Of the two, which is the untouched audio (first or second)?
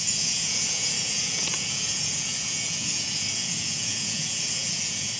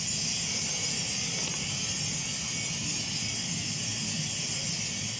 second